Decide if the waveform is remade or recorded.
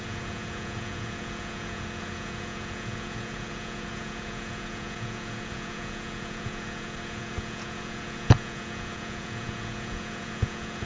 remade